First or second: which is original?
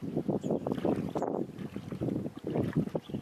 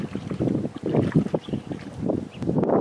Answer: second